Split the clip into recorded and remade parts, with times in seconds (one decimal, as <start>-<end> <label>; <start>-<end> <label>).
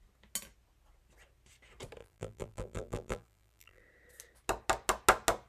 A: 0.0-2.0 recorded; 2.0-3.8 remade; 3.8-5.5 recorded